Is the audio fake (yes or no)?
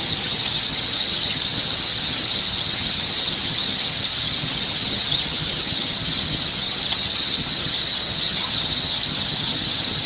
yes